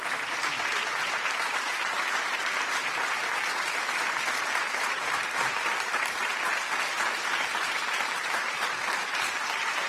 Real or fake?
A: fake